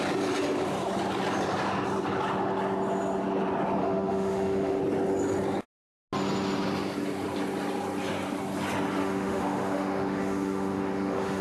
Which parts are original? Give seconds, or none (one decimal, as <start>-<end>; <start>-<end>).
0.0-3.8; 4.8-9.0